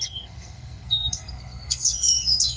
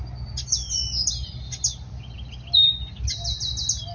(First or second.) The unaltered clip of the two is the second